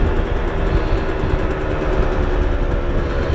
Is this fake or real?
real